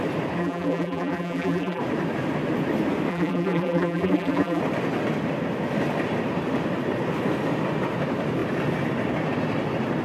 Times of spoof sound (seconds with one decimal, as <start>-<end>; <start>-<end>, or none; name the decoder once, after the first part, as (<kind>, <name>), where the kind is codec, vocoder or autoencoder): 0.4-1.8 (vocoder, BigVGAN v2); 3.1-4.6